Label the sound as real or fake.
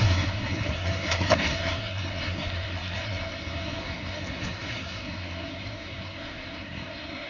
fake